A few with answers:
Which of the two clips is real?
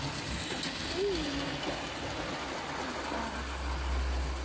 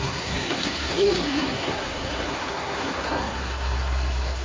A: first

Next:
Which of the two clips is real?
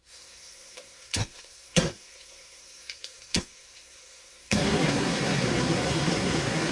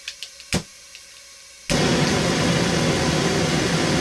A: second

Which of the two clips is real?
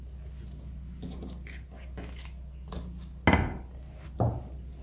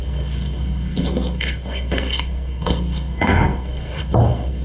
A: first